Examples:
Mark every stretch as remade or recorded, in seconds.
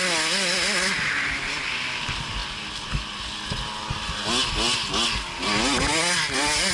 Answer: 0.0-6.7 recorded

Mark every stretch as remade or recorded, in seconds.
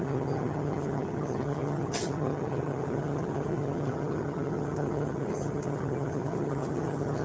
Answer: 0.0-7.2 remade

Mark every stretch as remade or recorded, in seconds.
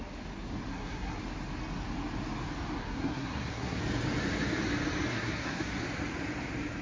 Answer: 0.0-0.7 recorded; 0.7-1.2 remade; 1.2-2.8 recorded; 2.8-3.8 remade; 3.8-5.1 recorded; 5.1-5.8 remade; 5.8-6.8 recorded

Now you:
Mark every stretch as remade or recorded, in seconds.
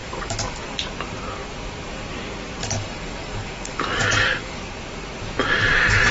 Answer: 0.0-0.7 remade; 0.7-2.6 recorded; 2.6-4.6 remade; 4.6-6.1 recorded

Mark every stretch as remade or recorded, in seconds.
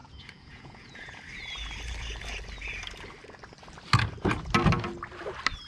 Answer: 0.0-1.2 remade; 1.2-5.7 recorded